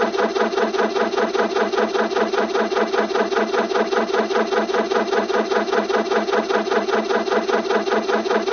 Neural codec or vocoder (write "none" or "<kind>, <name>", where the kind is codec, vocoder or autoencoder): none